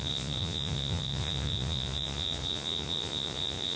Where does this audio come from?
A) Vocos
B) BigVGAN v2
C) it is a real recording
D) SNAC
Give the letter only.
A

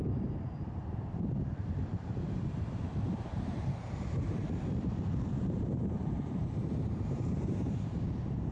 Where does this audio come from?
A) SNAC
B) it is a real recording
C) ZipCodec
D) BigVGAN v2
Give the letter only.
D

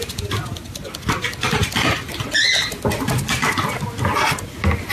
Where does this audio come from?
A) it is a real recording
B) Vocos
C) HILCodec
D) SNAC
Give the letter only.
A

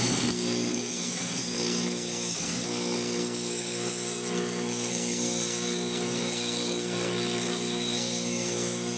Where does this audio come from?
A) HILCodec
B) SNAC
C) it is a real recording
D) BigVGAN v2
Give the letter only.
B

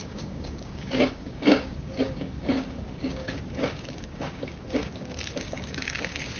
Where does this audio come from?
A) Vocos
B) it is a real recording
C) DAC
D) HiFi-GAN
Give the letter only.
C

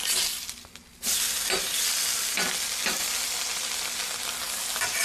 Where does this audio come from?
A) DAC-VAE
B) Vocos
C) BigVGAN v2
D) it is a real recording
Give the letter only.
D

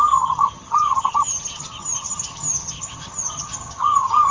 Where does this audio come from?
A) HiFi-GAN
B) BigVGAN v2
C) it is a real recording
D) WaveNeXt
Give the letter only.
A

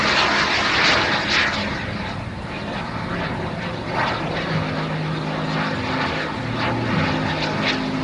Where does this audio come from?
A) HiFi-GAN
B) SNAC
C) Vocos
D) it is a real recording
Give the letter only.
D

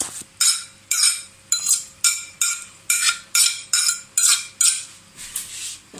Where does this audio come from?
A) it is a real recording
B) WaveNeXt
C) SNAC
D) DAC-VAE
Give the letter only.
A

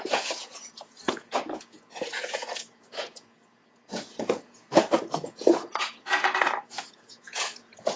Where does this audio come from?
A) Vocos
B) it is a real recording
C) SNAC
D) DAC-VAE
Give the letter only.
A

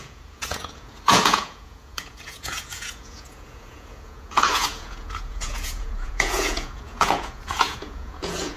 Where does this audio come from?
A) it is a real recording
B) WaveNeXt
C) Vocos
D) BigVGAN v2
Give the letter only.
C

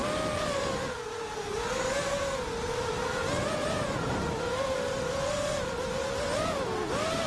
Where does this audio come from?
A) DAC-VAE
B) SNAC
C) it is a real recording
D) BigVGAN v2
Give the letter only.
C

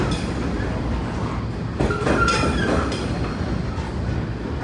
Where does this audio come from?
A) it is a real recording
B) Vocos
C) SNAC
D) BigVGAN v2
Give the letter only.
A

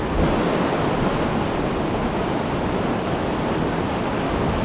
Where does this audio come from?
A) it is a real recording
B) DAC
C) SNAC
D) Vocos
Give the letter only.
A